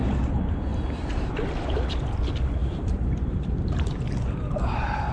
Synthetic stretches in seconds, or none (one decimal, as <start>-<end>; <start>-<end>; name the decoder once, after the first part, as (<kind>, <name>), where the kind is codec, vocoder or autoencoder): 0.7-1.3 (vocoder, BigVGAN v2); 2.6-5.1